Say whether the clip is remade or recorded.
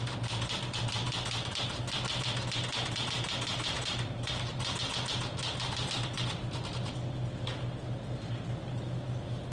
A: recorded